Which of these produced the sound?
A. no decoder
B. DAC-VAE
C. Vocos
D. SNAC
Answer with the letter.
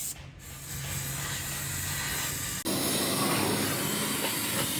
A